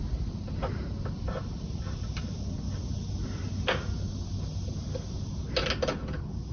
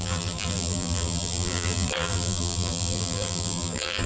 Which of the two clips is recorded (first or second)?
first